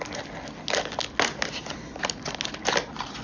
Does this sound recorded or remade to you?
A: recorded